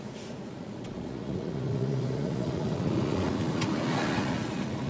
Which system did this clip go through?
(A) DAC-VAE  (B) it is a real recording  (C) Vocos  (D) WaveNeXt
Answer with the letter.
C